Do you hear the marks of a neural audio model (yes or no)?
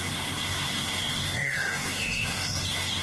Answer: yes